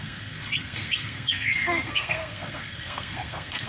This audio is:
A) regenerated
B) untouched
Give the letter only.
A